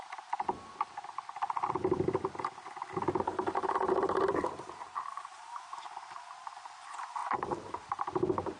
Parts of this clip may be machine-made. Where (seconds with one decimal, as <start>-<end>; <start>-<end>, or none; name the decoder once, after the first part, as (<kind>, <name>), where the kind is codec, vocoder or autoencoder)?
3.3-6.3 (vocoder, BigVGAN v2); 7.2-7.9